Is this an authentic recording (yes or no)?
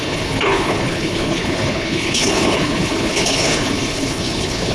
no